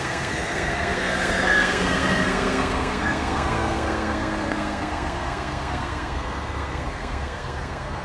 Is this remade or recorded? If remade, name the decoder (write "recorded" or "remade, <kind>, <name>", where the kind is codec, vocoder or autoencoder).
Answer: remade, codec, SNAC